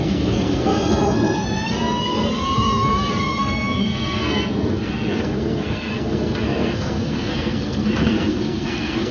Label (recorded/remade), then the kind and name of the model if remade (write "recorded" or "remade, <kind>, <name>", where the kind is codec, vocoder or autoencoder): remade, codec, SNAC